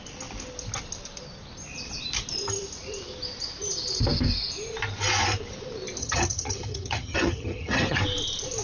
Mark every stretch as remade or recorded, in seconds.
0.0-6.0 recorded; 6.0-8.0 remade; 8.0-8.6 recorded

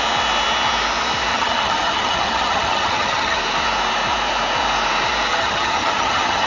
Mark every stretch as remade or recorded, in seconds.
0.0-1.3 recorded; 1.3-3.4 remade; 3.4-5.3 recorded; 5.3-6.5 remade

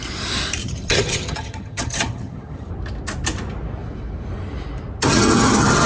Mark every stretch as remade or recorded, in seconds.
0.0-0.6 recorded; 0.6-2.7 remade; 2.7-5.1 recorded; 5.1-5.9 remade

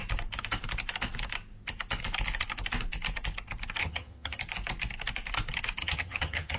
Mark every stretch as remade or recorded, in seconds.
0.0-3.8 recorded; 3.8-4.4 remade; 4.4-5.8 recorded; 5.8-6.6 remade

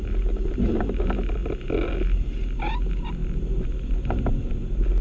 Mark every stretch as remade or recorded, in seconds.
0.0-5.0 recorded

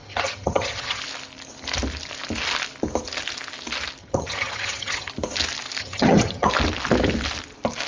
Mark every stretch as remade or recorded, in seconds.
0.0-1.0 remade; 1.0-4.0 recorded; 4.0-5.1 remade; 5.1-5.8 recorded; 5.8-6.5 remade; 6.5-7.9 recorded

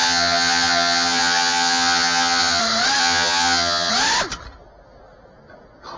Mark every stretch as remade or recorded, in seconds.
0.0-2.6 remade; 2.6-3.0 recorded; 3.0-3.9 remade; 3.9-6.0 recorded

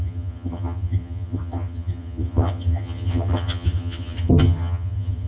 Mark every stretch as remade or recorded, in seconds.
0.0-5.3 remade